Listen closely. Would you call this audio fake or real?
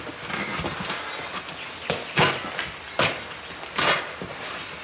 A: real